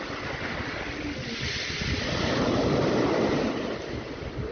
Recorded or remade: recorded